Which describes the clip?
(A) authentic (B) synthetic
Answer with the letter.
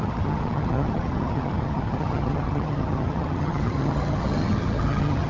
B